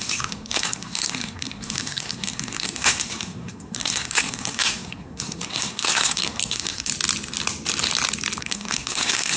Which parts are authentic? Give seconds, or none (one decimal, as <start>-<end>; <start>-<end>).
6.9-8.4

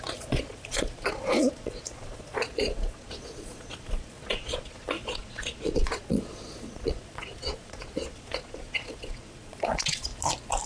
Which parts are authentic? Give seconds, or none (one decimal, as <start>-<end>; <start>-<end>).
10.1-10.7

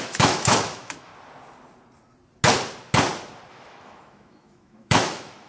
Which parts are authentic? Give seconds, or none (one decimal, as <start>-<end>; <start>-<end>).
1.1-3.5

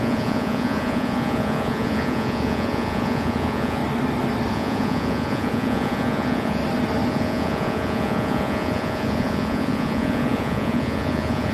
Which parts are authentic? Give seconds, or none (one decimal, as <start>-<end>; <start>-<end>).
3.8-4.5; 6.6-7.1

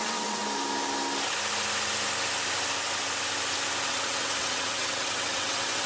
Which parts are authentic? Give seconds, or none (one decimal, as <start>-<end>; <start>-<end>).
0.4-3.9

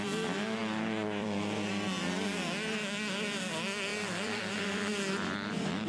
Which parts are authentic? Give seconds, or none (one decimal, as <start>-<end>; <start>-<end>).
0.0-0.6; 1.7-3.9

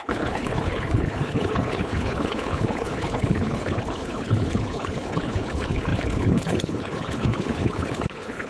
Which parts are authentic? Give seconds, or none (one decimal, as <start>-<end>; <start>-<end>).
none

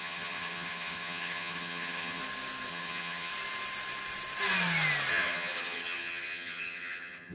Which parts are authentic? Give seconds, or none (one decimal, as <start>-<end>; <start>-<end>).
2.2-2.7; 3.3-5.1